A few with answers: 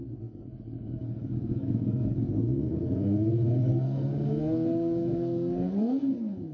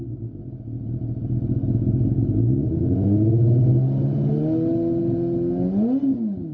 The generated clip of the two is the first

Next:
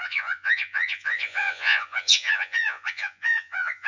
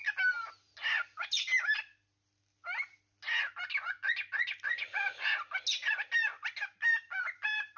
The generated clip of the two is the first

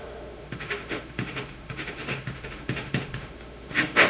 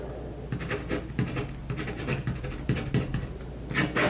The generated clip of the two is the first